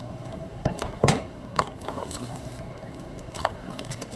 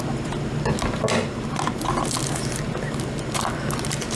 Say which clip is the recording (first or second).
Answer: second